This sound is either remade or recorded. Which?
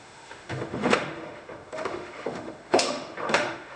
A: remade